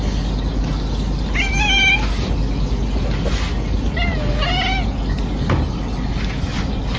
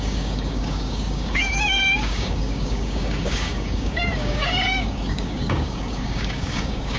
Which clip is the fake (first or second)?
second